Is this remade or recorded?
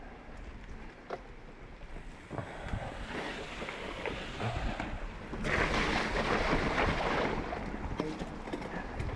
recorded